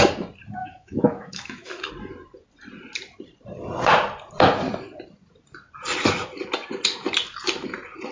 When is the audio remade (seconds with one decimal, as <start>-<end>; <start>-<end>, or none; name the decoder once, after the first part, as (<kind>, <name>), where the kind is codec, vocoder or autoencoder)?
0.6-1.9 (autoencoder, DAC-VAE)